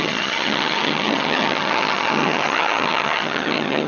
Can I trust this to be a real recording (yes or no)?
no